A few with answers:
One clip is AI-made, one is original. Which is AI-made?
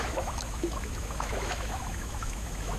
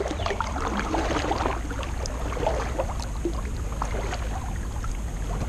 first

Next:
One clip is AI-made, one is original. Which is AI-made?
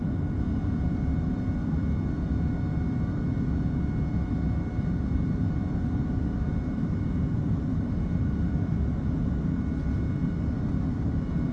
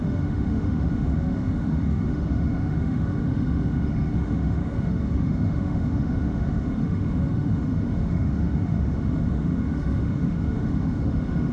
second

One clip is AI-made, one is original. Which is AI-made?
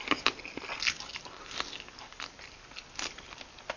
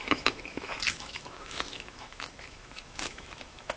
second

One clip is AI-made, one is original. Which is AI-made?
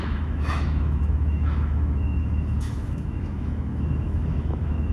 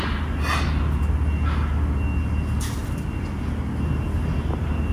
first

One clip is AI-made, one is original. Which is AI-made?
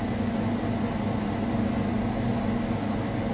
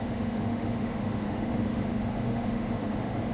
second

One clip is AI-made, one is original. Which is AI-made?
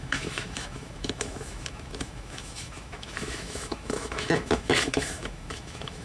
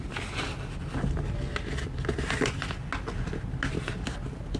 first